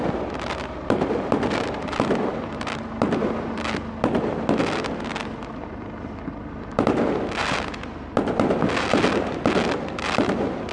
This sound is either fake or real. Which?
real